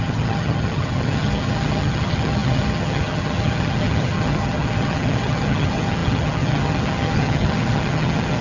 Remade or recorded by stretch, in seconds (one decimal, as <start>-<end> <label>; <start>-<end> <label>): 0.0-8.4 remade